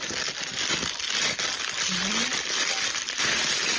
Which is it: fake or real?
real